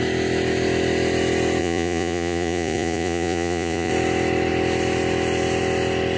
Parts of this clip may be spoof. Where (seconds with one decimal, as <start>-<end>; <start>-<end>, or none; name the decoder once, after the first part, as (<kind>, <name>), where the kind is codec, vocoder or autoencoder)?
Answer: 1.6-3.9 (vocoder, Vocos)